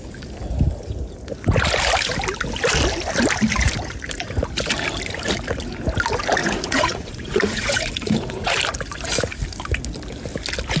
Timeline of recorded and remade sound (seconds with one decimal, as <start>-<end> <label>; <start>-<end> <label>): 0.0-6.4 recorded; 6.4-8.5 remade; 8.5-10.8 recorded